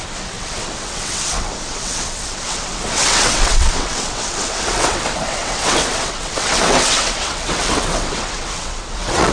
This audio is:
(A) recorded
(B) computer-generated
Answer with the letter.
B